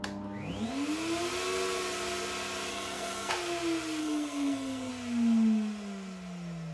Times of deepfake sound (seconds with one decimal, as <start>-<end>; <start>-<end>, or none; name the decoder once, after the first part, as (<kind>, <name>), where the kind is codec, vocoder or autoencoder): 2.7-3.3 (codec, SNAC); 4.0-4.9